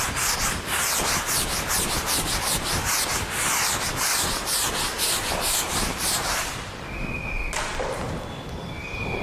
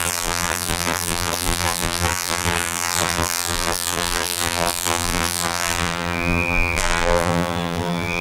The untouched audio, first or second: first